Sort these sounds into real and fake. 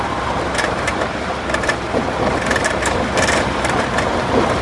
fake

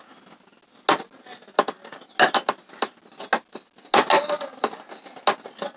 real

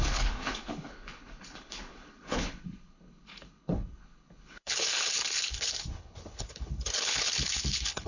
fake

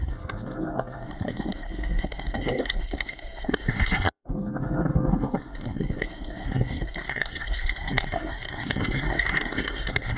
fake